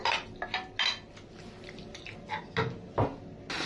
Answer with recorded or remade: recorded